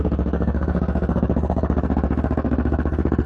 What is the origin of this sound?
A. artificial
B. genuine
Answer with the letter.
A